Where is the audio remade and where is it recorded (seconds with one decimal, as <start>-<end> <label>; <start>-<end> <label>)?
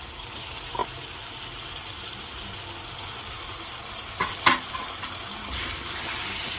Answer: 0.0-6.6 recorded